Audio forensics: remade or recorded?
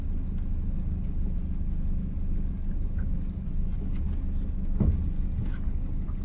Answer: recorded